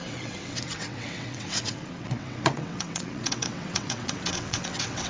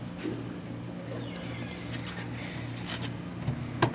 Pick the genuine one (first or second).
second